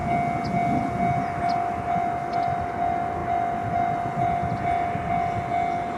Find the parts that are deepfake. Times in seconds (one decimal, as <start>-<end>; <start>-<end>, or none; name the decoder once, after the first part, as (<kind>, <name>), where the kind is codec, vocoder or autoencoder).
none